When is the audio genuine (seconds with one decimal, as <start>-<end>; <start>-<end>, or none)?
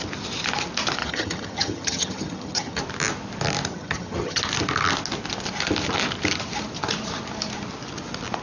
0.0-1.0; 2.8-3.7; 4.4-8.4